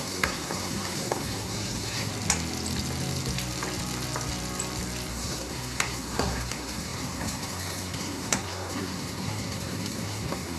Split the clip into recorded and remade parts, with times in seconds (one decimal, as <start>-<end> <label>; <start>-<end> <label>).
0.0-2.1 remade; 2.1-5.1 recorded; 5.1-10.6 remade